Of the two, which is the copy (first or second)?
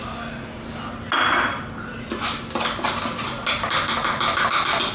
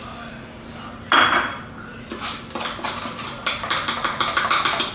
second